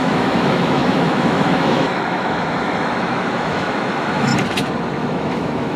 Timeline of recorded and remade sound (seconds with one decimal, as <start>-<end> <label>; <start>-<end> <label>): 0.0-4.3 remade; 4.3-5.0 recorded; 5.0-5.8 remade